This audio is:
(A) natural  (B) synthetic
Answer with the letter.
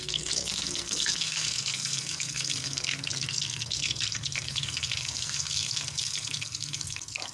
B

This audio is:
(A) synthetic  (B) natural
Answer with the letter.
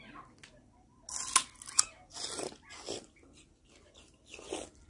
B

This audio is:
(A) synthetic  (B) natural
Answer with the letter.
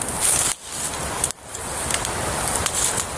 B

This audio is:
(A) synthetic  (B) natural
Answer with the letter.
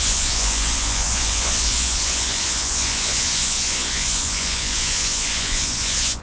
A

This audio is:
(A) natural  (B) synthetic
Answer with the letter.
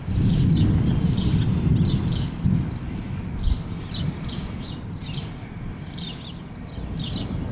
A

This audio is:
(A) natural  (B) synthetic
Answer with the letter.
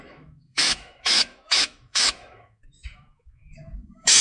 B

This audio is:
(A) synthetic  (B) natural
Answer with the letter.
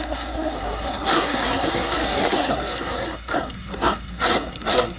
A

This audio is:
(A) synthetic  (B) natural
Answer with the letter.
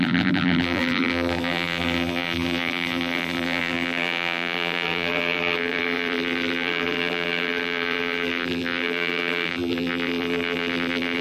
A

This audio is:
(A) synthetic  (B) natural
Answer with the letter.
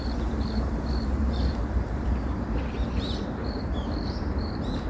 A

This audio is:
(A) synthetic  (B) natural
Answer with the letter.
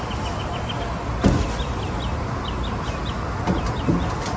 B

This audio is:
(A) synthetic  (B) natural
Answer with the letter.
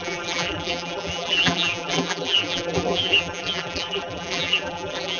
A